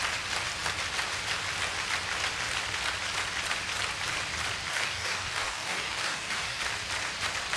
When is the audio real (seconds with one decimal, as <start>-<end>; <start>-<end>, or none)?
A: 0.0-4.7; 6.6-7.6